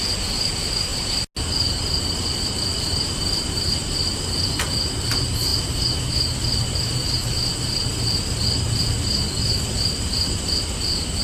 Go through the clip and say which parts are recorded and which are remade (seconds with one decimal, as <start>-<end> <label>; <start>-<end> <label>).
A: 0.0-11.2 recorded